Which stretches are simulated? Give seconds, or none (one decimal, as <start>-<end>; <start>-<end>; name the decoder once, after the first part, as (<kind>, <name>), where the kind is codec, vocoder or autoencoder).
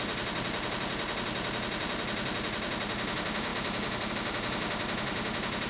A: none